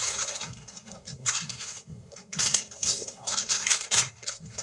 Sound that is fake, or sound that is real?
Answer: fake